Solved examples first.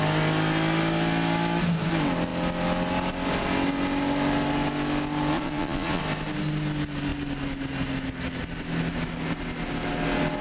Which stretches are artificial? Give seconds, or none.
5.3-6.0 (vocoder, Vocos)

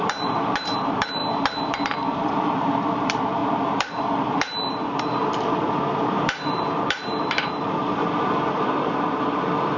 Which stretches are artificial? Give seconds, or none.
0.0-1.2 (vocoder, BigVGAN v2); 1.7-9.8